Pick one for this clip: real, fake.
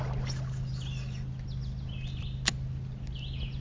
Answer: real